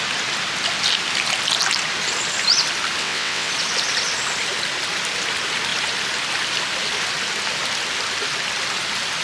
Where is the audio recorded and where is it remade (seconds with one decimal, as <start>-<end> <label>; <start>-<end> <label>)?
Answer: 0.0-3.0 recorded; 3.0-3.5 remade; 3.5-9.2 recorded